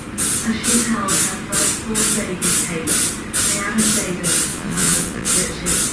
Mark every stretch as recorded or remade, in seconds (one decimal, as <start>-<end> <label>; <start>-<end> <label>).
0.0-4.5 recorded; 4.5-5.3 remade; 5.3-5.9 recorded